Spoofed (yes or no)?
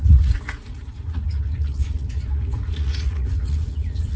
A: yes